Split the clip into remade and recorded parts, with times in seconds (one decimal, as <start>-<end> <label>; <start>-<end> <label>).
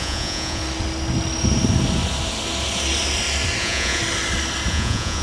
0.0-0.6 remade; 0.6-3.6 recorded; 3.6-4.0 remade; 4.0-4.7 recorded; 4.7-5.2 remade